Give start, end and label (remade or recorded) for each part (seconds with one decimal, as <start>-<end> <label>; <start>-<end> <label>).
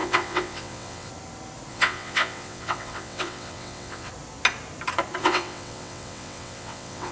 0.0-1.1 remade; 1.1-1.7 recorded; 1.7-4.1 remade; 4.1-5.2 recorded; 5.2-7.1 remade